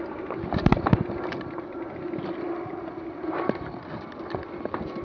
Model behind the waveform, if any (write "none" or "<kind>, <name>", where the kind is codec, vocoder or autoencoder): none